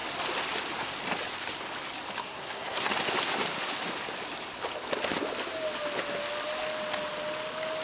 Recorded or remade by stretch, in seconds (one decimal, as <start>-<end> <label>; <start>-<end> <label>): 0.0-2.2 recorded; 2.2-2.9 remade; 2.9-7.8 recorded